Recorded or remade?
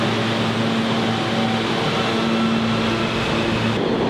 recorded